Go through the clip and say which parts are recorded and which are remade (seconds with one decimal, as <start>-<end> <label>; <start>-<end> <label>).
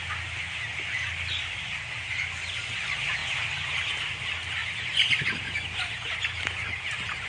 0.0-7.3 recorded